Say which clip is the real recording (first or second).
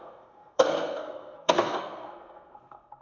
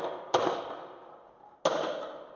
second